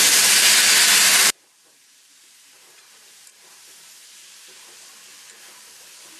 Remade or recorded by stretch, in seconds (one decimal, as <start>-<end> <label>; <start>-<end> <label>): 0.0-1.2 recorded; 1.2-4.9 remade; 4.9-6.2 recorded